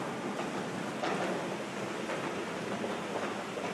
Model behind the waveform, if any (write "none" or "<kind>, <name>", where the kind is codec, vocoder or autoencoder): none